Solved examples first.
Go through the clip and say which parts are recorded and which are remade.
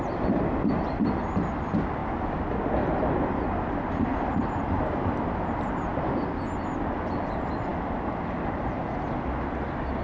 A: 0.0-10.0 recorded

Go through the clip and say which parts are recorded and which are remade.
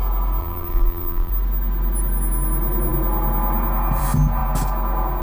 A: 0.0-0.4 recorded; 0.4-1.3 remade; 1.3-5.2 recorded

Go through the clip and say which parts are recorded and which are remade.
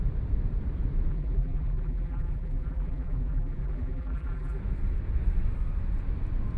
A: 0.0-1.1 recorded; 1.1-4.6 remade; 4.6-6.6 recorded